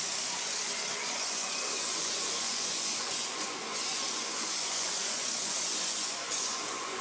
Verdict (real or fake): fake